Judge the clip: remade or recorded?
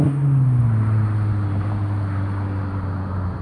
recorded